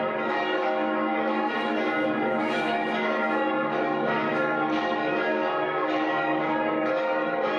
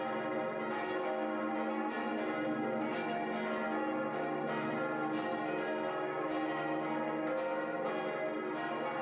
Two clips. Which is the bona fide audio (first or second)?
second